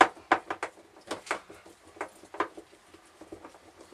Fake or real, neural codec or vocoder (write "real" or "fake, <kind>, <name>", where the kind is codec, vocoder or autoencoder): real